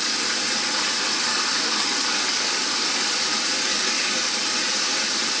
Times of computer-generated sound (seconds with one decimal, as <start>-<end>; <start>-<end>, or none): 1.3-2.6; 3.7-4.3